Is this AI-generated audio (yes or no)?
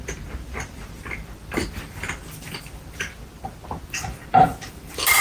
no